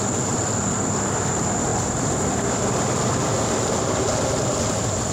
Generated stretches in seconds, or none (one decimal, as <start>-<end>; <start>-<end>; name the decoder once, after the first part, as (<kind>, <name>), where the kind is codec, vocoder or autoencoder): none